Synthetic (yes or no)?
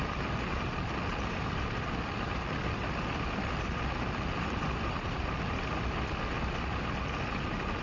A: no